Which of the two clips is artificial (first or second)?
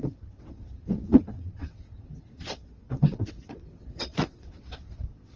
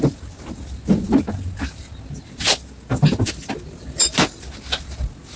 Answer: first